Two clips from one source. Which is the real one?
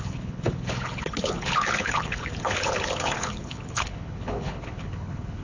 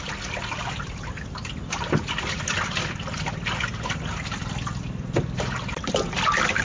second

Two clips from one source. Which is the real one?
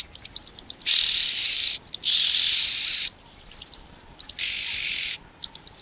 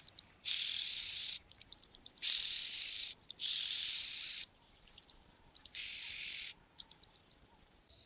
first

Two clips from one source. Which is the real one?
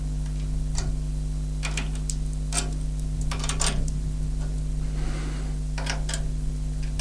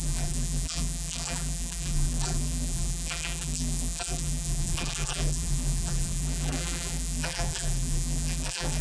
first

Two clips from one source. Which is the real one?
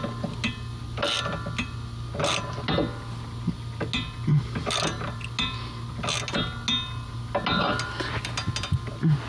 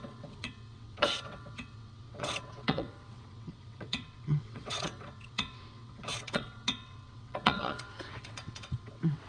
first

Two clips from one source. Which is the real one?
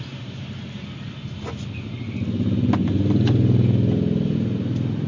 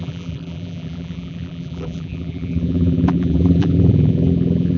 first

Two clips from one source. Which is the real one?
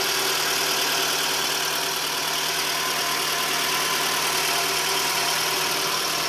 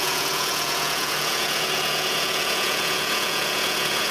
first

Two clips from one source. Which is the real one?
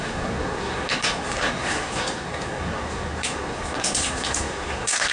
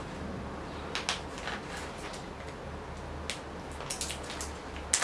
second